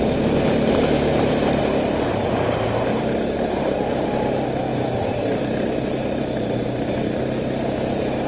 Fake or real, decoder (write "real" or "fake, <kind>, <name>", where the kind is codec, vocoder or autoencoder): fake, vocoder, BigVGAN v2